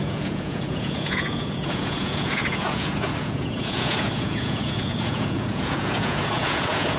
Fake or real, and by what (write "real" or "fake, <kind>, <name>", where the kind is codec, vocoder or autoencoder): fake, vocoder, Vocos